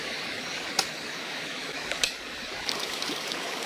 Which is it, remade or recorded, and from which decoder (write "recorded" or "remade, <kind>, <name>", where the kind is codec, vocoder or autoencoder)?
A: remade, codec, DAC